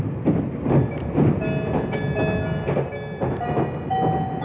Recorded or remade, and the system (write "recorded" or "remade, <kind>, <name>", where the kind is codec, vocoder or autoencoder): recorded